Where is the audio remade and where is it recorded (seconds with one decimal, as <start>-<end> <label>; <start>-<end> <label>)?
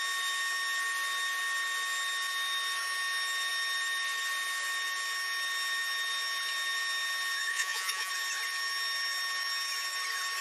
0.0-7.5 recorded; 7.5-8.1 remade; 8.1-10.4 recorded